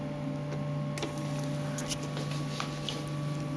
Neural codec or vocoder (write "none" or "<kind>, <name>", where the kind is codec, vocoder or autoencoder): none